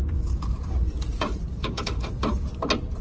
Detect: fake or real fake